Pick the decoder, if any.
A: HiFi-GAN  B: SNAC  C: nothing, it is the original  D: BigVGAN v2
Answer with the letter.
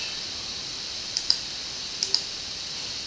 C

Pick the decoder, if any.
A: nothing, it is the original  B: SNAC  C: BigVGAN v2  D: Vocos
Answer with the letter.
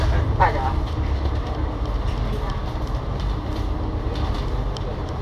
A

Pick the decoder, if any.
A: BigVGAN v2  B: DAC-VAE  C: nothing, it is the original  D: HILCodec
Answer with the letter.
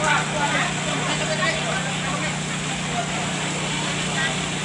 C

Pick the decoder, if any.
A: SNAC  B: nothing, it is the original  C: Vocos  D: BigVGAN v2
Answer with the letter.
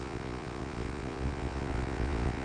C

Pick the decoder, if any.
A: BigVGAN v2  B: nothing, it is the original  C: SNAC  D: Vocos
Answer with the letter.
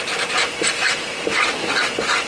A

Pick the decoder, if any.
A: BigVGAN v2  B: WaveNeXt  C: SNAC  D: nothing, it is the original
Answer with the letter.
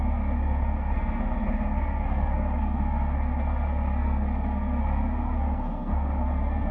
C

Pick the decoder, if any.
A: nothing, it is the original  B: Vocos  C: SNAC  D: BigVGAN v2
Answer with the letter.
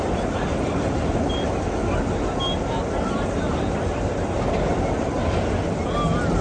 A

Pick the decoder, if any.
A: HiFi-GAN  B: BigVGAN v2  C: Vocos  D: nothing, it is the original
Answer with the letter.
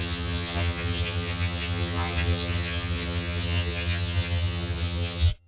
A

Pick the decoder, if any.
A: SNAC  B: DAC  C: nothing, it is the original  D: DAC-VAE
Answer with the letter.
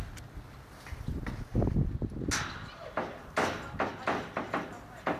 C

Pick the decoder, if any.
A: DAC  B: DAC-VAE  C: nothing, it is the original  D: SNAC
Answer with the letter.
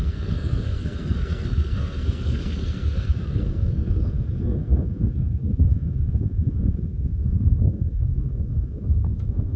D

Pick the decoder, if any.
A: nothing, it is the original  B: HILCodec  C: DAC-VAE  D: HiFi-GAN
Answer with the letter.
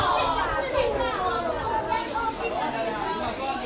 A